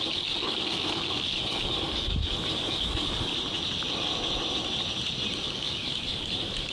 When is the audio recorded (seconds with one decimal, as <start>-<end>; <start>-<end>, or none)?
3.3-5.4